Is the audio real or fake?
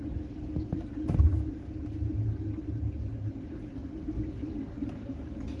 real